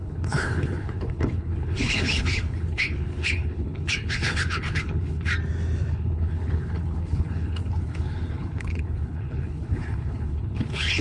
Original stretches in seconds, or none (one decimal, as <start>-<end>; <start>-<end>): 5.3-5.9